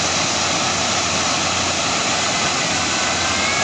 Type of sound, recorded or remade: recorded